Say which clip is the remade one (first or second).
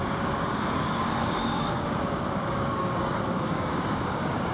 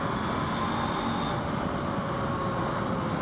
first